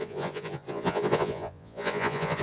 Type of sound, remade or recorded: remade